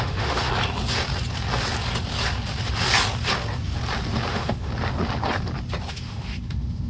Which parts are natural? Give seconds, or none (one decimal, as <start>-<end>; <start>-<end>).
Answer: 0.5-4.3; 4.7-5.9